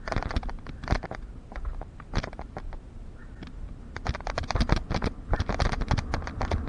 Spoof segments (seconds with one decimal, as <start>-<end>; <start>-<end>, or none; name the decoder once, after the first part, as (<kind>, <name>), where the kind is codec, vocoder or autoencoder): none